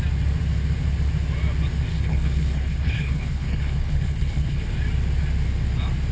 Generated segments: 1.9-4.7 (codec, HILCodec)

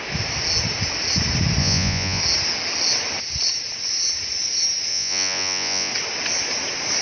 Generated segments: 1.6-2.2 (vocoder, Vocos); 4.9-5.9

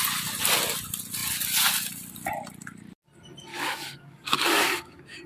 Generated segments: 3.5-5.3 (codec, DAC)

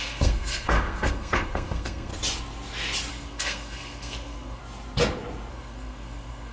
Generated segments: 0.0-2.1 (codec, SNAC); 3.1-4.6; 5.5-6.5

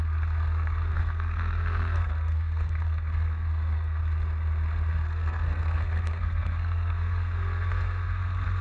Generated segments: 0.0-4.0 (codec, SNAC); 4.9-8.6

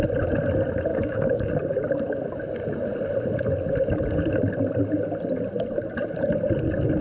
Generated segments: 0.9-1.5 (codec, DAC)